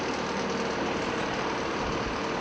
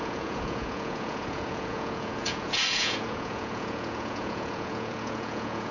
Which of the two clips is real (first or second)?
first